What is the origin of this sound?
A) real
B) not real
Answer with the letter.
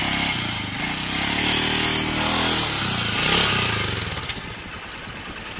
A